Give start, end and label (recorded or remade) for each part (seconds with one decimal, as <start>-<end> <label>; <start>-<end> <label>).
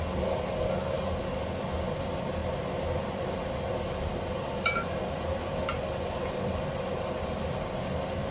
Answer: 0.0-8.3 recorded